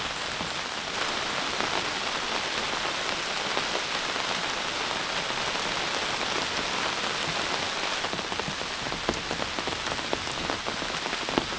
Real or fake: real